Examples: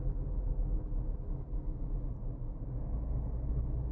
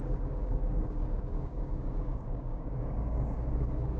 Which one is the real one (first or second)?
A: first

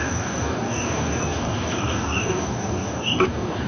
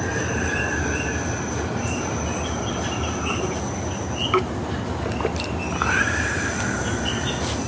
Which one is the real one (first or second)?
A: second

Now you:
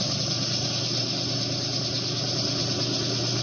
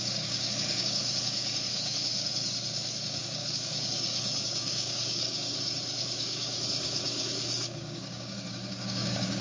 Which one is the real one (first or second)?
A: first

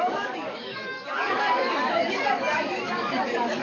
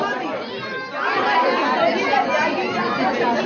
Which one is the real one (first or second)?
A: second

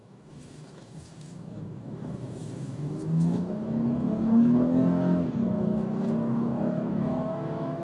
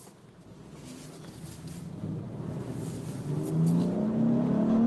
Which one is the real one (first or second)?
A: second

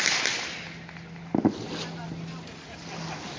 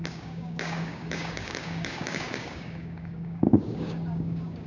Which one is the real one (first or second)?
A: first